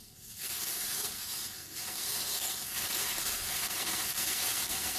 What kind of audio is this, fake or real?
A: fake